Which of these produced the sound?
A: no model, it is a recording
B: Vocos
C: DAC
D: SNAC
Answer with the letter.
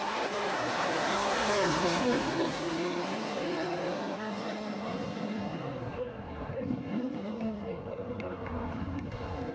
D